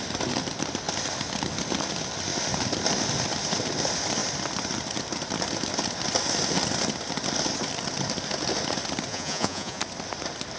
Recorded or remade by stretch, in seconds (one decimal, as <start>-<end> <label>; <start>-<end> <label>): 0.0-9.1 recorded; 9.1-9.8 remade; 9.8-10.6 recorded